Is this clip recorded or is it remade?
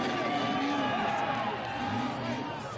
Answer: recorded